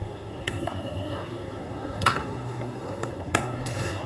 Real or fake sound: fake